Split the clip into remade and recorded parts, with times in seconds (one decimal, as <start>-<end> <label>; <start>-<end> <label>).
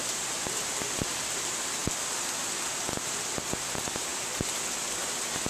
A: 0.0-5.5 recorded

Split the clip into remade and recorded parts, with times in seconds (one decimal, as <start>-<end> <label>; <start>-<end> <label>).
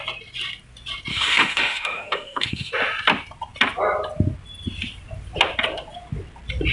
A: 0.0-1.1 recorded; 1.1-2.7 remade; 2.7-6.7 recorded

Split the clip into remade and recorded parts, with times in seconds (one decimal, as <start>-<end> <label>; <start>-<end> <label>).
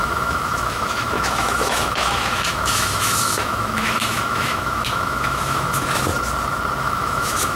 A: 0.0-6.1 remade; 6.1-6.8 recorded; 6.8-7.6 remade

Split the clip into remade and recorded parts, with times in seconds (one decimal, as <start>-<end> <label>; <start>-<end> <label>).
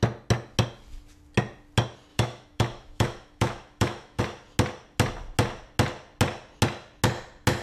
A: 0.0-2.1 recorded; 2.1-4.2 remade; 4.2-7.6 recorded